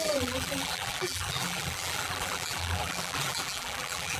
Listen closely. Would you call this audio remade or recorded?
remade